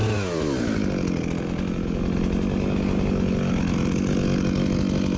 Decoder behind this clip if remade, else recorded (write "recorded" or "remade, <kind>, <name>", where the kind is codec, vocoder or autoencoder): recorded